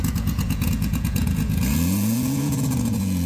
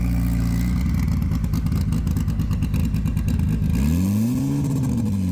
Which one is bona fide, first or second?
second